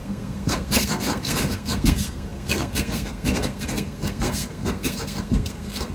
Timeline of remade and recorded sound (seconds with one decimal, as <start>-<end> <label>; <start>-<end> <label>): 0.0-5.9 remade